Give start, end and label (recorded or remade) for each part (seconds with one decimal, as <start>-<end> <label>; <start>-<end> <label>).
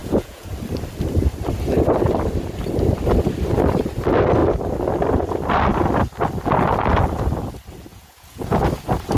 0.0-0.5 remade; 0.5-7.9 recorded; 7.9-8.6 remade; 8.6-9.2 recorded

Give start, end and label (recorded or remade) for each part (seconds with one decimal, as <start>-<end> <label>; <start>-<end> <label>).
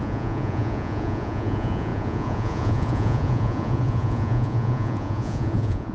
0.0-5.9 remade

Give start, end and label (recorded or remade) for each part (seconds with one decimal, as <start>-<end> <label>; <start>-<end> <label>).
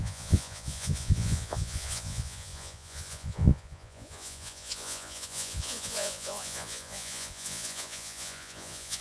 0.0-9.0 remade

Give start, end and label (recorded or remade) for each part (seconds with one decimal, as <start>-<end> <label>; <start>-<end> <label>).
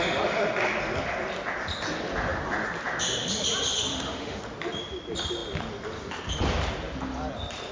0.0-3.9 recorded; 3.9-4.4 remade; 4.4-7.7 recorded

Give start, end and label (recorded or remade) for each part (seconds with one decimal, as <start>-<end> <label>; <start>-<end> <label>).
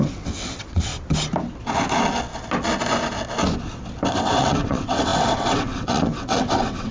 0.0-0.9 remade; 0.9-4.1 recorded; 4.1-6.9 remade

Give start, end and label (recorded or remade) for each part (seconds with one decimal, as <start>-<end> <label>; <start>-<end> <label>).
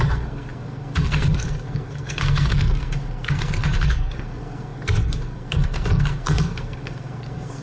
0.0-7.6 remade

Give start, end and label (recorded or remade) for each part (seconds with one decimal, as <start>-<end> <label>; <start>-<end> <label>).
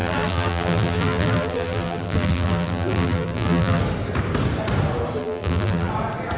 0.0-3.8 remade; 3.8-5.2 recorded; 5.2-5.9 remade; 5.9-6.4 recorded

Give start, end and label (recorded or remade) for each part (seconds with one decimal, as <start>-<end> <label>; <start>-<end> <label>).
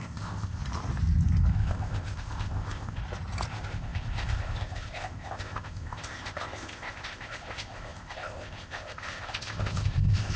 0.0-0.6 remade; 0.6-1.5 recorded; 1.5-3.0 remade; 3.0-3.5 recorded; 3.5-10.4 remade